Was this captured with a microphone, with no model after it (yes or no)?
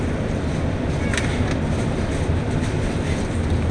yes